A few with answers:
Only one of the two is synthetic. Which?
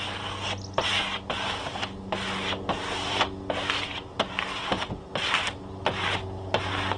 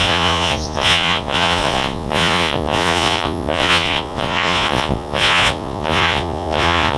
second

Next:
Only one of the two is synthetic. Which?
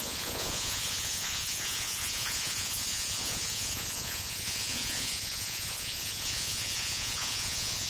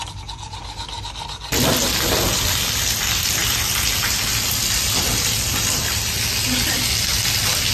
first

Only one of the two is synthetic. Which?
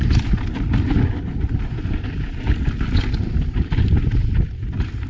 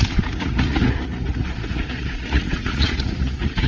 second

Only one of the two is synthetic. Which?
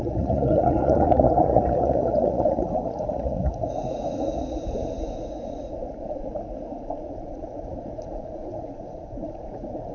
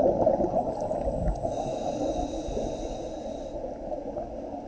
first